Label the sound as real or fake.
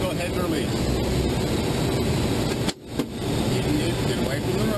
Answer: real